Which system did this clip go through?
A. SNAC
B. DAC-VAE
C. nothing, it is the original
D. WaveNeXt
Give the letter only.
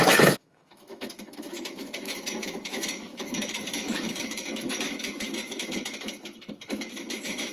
B